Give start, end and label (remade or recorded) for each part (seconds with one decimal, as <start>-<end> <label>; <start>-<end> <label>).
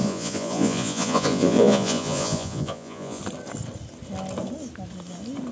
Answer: 0.0-3.2 remade; 3.2-5.5 recorded